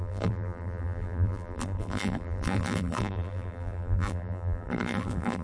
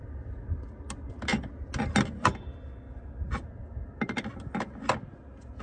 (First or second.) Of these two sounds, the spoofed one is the first